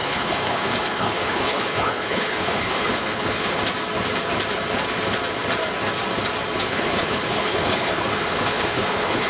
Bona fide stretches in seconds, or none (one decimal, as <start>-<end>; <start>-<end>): 3.6-6.7